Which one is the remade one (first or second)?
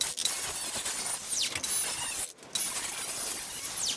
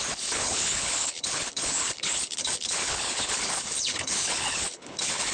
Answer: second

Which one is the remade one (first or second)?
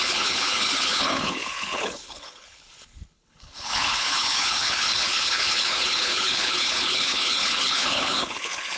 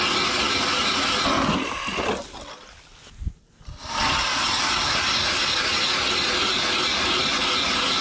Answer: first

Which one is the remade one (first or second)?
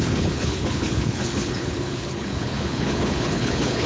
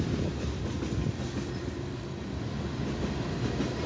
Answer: first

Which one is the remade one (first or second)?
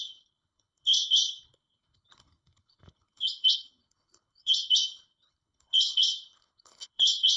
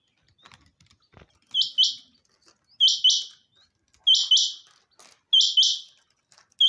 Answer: first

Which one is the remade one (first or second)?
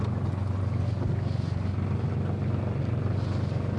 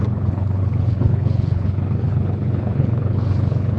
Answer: second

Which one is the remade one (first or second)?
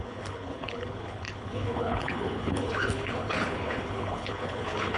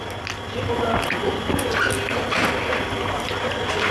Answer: first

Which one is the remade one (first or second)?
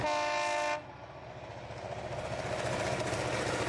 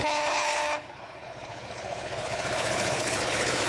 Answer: second